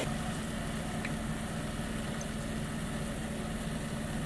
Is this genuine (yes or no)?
yes